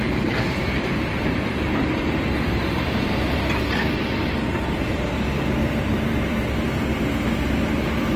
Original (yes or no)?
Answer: no